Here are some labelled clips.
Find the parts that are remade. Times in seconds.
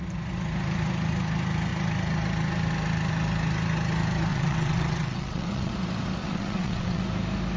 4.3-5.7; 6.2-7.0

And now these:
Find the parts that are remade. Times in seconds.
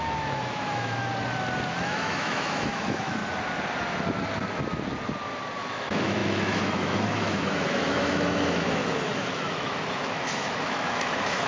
0.0-1.1; 1.7-3.2; 5.6-11.5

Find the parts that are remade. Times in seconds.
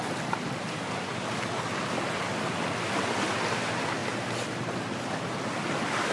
none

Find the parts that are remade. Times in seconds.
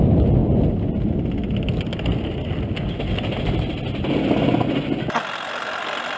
none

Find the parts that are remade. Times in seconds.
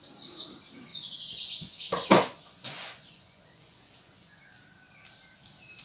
0.9-4.4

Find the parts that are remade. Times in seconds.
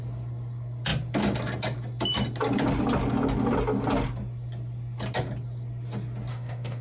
6.3-6.8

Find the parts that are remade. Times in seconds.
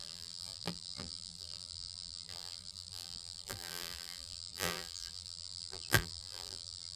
0.0-7.0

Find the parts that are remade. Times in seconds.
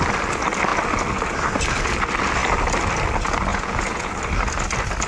3.5-4.1